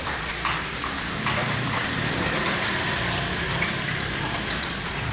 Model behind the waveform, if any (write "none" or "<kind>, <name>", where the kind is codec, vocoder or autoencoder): vocoder, BigVGAN v2